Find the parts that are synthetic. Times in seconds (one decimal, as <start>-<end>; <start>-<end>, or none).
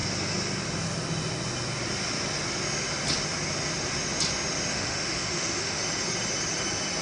4.7-5.8